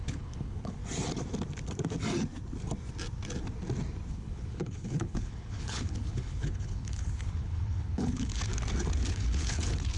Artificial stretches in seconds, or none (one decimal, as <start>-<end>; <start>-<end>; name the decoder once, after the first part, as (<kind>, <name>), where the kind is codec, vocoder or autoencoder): 0.0-0.8 (codec, HILCodec); 4.1-8.5; 9.1-10.0